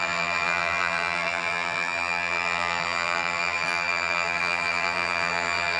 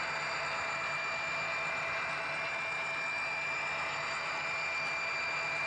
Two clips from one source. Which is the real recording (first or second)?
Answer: second